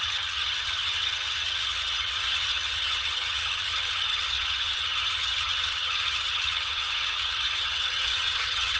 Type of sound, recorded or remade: remade